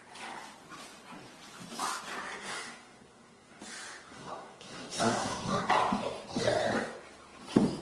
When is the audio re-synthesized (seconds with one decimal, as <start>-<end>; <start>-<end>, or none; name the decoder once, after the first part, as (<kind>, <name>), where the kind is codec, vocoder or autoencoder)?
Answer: 2.4-3.6 (codec, SNAC); 4.1-5.7